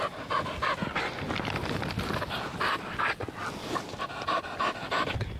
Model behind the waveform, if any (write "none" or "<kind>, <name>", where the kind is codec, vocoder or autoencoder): none